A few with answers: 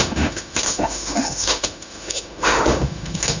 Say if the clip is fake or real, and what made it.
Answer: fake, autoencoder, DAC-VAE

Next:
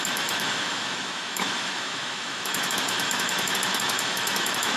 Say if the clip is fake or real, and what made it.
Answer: fake, autoencoder, DAC-VAE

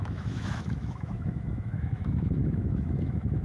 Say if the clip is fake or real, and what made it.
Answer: fake, autoencoder, DAC-VAE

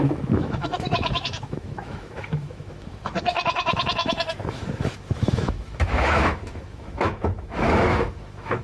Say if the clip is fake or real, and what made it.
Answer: fake, autoencoder, DAC-VAE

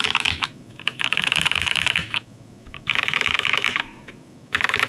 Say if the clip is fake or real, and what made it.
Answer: fake, autoencoder, DAC-VAE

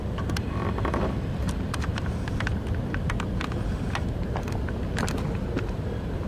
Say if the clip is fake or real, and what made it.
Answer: real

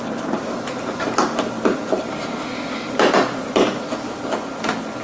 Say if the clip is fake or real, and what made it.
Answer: real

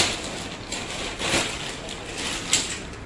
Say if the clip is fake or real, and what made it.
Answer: real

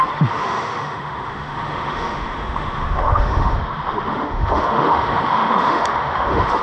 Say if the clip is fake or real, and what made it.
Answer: fake, autoencoder, DAC-VAE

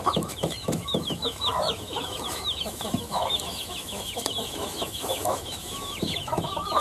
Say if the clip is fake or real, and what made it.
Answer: fake, autoencoder, DAC-VAE